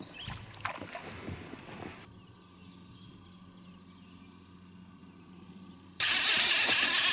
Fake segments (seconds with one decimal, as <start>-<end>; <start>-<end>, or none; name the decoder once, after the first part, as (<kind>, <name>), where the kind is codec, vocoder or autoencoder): 5.0-6.5 (vocoder, BigVGAN v2)